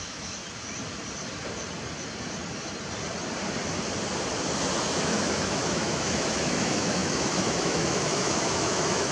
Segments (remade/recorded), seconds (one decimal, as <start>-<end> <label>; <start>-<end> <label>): 0.0-0.4 remade; 0.4-4.8 recorded; 4.8-9.1 remade